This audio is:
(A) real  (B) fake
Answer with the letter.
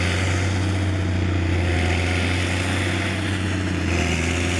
A